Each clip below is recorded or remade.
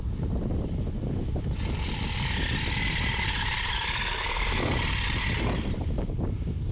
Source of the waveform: recorded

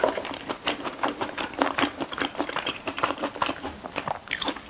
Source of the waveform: remade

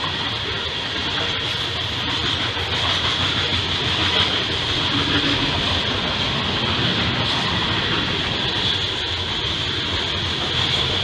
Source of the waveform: recorded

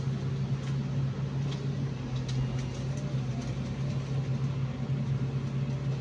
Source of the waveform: recorded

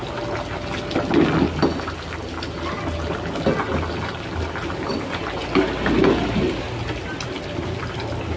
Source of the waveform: recorded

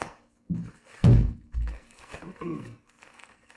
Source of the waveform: remade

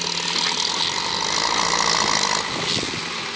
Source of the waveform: recorded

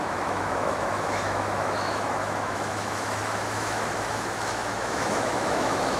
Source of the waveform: remade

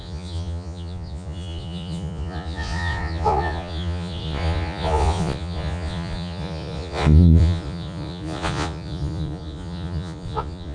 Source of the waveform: remade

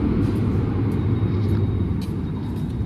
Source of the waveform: recorded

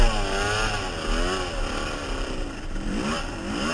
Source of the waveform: recorded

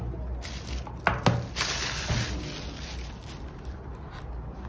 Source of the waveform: recorded